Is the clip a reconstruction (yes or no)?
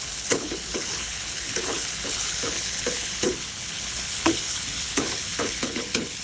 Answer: yes